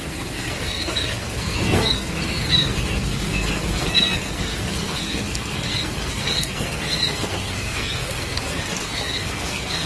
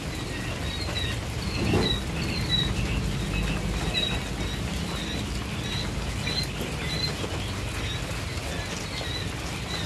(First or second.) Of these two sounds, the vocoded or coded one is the first